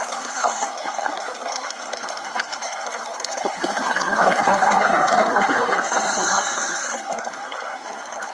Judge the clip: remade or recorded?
remade